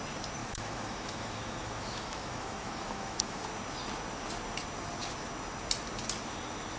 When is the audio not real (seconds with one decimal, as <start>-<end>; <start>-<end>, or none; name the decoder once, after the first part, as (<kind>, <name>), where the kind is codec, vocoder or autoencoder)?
0.4-3.5 (autoencoder, DAC-VAE)